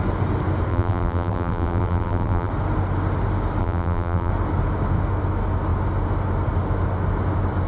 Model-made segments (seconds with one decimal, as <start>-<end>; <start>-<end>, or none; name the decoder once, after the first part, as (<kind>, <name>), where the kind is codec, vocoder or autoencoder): 0.7-2.5 (vocoder, BigVGAN v2); 3.6-4.3